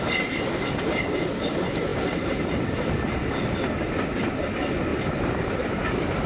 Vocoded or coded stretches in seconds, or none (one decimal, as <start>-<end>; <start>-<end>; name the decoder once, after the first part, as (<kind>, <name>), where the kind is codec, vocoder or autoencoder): 1.9-4.2 (vocoder, BigVGAN v2); 4.9-6.3